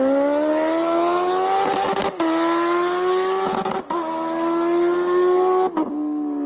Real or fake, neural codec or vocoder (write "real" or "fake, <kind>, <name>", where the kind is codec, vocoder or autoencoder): real